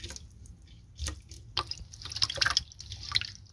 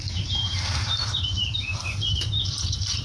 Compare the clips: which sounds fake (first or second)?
second